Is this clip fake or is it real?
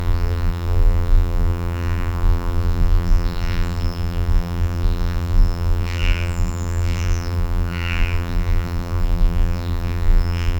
fake